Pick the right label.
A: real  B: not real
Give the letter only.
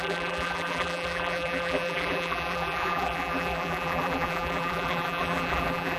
B